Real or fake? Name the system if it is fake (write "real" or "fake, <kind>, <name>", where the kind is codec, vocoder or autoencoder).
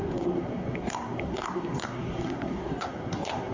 fake, codec, SNAC